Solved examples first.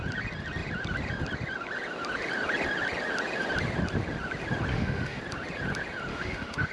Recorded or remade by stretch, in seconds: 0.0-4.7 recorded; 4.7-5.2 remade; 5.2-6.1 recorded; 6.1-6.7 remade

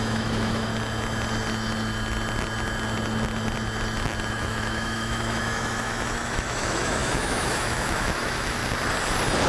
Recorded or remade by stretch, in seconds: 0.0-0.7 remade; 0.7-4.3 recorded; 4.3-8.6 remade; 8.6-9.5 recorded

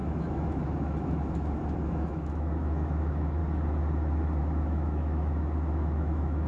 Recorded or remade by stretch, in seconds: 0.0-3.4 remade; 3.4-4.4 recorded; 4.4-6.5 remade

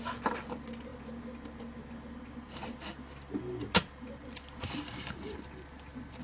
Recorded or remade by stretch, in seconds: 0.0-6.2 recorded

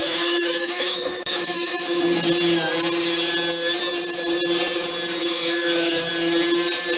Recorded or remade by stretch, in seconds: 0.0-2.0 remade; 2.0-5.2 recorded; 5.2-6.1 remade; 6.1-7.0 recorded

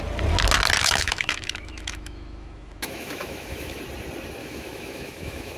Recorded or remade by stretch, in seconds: 0.0-0.8 recorded; 0.8-3.8 remade; 3.8-4.4 recorded; 4.4-5.6 remade

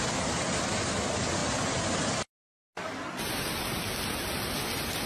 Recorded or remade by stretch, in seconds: 0.0-5.1 recorded